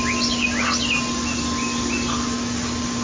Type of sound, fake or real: real